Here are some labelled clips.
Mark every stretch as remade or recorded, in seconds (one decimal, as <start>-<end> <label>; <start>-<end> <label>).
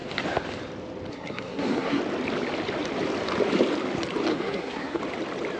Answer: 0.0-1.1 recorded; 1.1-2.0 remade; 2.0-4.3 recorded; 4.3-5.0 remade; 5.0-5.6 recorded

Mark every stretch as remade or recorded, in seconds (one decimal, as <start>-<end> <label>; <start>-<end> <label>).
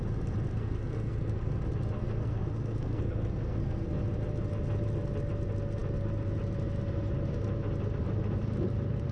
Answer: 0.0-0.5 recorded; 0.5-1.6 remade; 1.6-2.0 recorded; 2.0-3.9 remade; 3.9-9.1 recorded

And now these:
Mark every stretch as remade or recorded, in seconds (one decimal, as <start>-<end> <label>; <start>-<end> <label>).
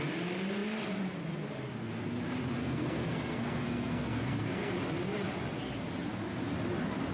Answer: 0.0-2.6 recorded; 2.6-4.7 remade; 4.7-7.1 recorded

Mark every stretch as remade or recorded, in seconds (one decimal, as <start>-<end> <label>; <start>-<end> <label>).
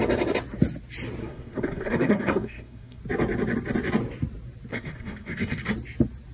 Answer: 0.0-1.2 recorded; 1.2-3.0 remade; 3.0-4.7 recorded; 4.7-5.6 remade; 5.6-6.3 recorded